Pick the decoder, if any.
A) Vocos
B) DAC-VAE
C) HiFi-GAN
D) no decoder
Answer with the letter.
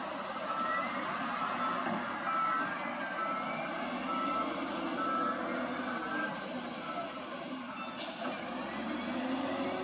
D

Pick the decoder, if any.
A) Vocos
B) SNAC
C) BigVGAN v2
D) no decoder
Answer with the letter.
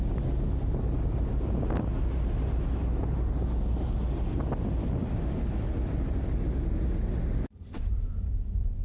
D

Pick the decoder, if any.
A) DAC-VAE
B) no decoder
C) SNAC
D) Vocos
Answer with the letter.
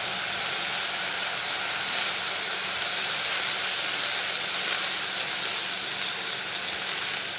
B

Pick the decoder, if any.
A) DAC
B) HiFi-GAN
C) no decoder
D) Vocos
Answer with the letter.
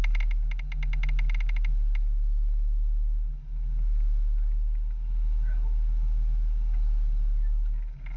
C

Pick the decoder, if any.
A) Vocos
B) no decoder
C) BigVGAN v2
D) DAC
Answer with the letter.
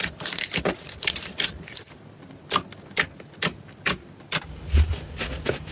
B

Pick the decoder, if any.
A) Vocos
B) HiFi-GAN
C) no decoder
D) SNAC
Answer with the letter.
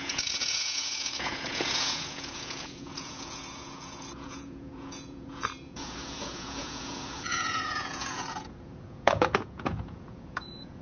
A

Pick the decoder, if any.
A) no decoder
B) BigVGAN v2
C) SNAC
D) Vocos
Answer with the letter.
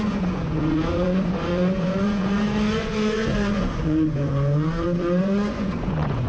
D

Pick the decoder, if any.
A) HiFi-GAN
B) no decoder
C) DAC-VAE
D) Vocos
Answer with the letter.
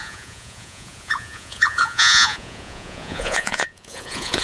D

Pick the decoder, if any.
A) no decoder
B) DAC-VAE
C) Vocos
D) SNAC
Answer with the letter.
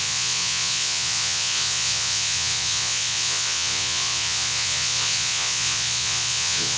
C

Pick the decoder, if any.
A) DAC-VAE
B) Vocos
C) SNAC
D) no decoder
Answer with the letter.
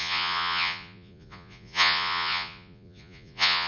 B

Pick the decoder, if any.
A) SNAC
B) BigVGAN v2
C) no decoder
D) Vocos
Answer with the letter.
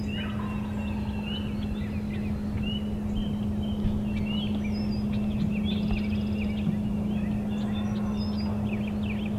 C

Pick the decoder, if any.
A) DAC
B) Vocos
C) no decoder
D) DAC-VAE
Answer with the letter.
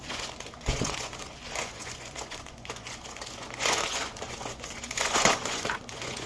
B